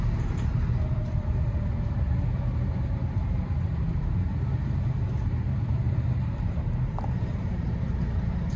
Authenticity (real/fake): fake